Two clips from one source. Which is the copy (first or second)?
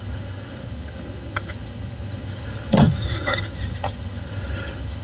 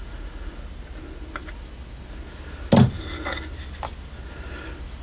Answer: first